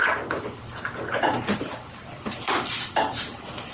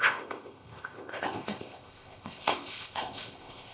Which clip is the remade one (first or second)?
second